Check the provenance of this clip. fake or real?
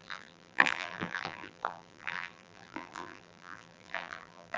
fake